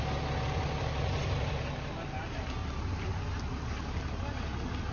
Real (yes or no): yes